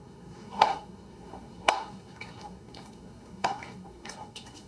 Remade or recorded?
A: remade